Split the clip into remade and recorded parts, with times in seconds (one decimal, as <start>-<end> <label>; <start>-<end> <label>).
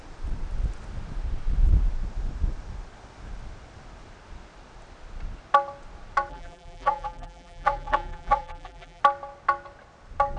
0.0-6.3 recorded; 6.3-9.0 remade; 9.0-10.4 recorded